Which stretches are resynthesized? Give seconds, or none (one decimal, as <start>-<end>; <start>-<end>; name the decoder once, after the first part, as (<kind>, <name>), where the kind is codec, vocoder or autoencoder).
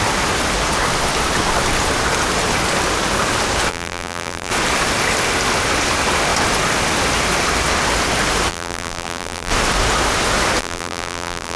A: 3.7-4.5 (vocoder, BigVGAN v2); 8.5-9.5; 10.6-11.6